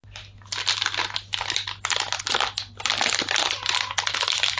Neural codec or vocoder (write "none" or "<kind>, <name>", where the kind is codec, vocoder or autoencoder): none